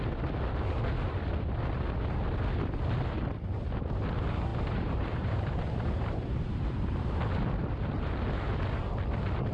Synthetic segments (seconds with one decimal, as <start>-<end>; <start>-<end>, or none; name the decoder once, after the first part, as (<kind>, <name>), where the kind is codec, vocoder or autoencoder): 4.5-7.2 (vocoder, BigVGAN v2)